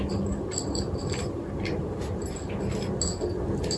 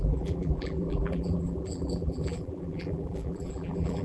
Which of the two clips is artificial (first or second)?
second